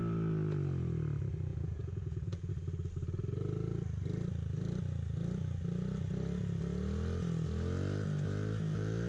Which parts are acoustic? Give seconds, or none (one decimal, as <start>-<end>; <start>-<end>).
0.0-1.5; 2.5-9.1